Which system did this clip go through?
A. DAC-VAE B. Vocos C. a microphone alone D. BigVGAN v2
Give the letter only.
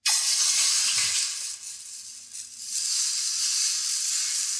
C